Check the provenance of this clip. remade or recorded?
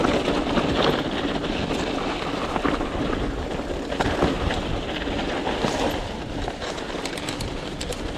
recorded